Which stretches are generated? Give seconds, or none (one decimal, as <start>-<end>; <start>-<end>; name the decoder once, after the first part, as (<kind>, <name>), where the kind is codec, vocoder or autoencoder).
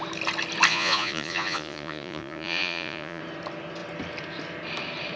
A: 0.7-3.2 (vocoder, Vocos)